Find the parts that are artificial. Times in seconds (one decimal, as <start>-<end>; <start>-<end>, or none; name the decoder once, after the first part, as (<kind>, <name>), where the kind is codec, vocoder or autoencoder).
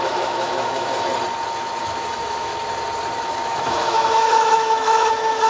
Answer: 0.0-1.1 (autoencoder, DAC-VAE); 1.8-2.5; 3.3-5.5